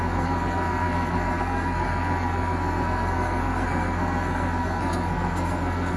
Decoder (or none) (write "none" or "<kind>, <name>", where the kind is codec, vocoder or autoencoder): codec, SNAC